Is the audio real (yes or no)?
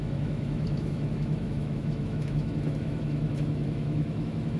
no